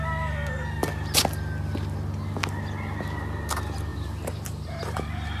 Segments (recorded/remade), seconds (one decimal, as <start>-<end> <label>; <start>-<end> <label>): 0.0-3.9 recorded; 3.9-5.4 remade